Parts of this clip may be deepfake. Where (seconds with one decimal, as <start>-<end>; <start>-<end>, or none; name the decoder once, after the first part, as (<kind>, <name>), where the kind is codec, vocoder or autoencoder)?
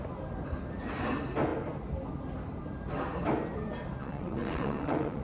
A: 4.0-5.2 (vocoder, WaveNeXt)